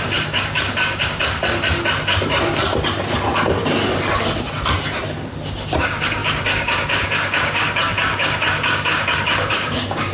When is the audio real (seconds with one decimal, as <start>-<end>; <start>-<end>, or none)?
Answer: 1.4-5.8